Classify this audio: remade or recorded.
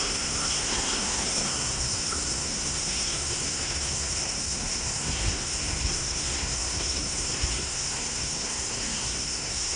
remade